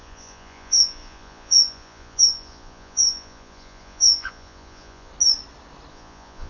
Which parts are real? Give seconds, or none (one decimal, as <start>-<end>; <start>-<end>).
5.1-5.9